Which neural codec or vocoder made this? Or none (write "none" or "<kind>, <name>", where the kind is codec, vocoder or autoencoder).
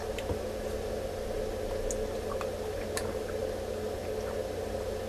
none